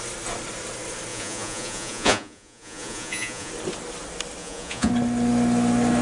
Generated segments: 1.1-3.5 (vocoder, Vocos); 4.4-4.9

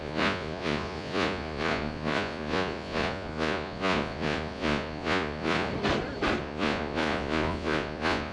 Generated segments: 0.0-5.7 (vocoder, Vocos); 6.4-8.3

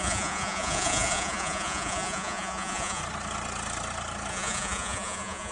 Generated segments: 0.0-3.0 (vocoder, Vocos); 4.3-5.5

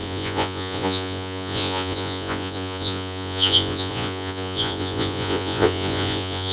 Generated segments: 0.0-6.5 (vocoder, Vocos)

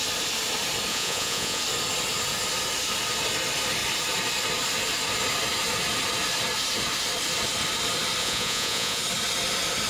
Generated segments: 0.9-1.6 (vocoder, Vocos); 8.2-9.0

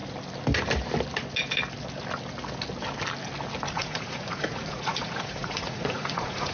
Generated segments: 3.7-6.5 (vocoder, Vocos)